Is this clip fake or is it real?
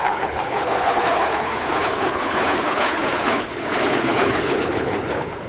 fake